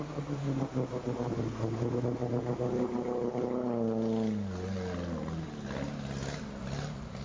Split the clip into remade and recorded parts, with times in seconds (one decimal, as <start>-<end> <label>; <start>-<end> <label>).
0.0-7.2 recorded